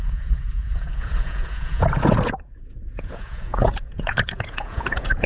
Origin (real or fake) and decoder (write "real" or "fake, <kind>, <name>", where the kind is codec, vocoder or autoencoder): fake, vocoder, Vocos